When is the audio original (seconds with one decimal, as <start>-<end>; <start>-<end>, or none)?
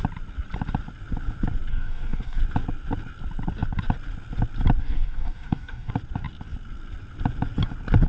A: 0.0-1.7; 2.4-4.8; 5.9-8.1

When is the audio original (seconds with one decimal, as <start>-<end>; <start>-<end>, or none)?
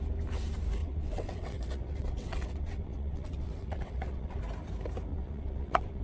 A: 0.0-0.8; 4.4-5.1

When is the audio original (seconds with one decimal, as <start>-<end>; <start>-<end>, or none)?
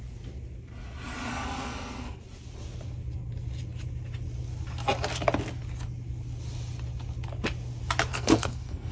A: 0.0-1.3; 2.2-8.1